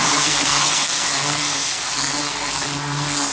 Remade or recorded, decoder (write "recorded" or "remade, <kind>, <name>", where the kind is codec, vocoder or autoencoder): remade, codec, SNAC